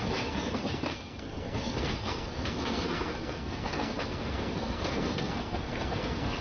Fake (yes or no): yes